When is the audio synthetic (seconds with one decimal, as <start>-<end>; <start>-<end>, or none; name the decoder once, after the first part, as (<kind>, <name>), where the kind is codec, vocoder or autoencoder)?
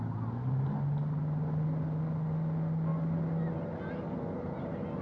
none